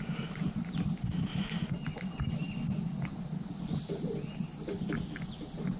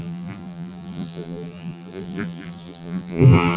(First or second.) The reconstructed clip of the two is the second